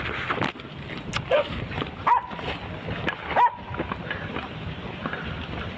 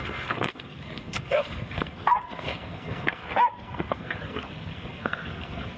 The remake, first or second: second